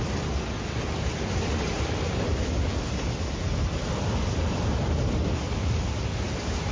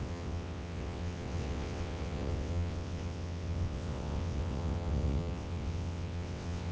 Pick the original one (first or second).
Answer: first